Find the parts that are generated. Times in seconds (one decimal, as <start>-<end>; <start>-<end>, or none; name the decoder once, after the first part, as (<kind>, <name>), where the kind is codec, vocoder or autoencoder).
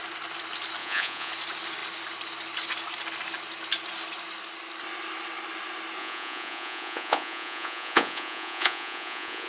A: 0.8-1.3 (vocoder, Vocos); 6.0-9.5